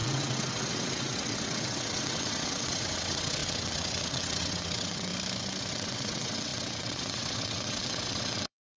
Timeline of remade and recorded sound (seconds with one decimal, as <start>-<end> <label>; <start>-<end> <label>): 0.0-5.1 remade; 5.1-5.7 recorded; 5.7-8.8 remade

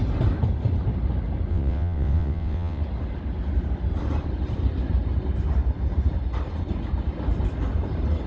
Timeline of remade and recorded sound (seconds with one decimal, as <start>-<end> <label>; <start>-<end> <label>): 0.0-1.5 recorded; 1.5-2.8 remade; 2.8-8.3 recorded

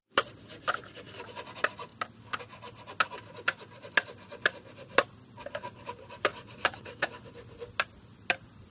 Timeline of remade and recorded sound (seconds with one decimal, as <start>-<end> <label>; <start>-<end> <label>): 0.0-6.3 recorded; 6.3-7.3 remade; 7.3-8.7 recorded

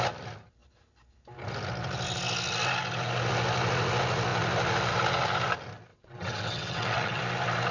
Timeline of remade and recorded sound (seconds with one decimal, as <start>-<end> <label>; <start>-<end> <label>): 0.0-5.9 recorded; 5.9-7.2 remade; 7.2-7.7 recorded